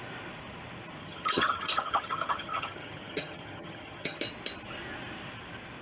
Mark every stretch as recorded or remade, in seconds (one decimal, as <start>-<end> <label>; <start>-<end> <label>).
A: 0.0-1.0 recorded; 1.0-4.2 remade; 4.2-5.8 recorded